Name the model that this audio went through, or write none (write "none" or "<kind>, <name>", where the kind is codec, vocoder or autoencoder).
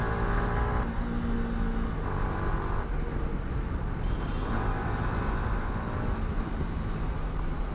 none